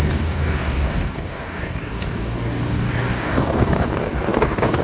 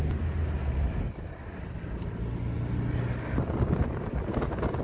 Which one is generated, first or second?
first